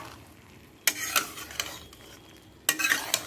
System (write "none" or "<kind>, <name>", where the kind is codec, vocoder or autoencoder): none